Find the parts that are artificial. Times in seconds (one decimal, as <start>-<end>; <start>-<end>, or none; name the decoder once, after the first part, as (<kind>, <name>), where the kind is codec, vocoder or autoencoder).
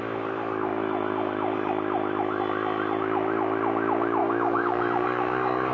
4.2-5.7 (codec, DAC)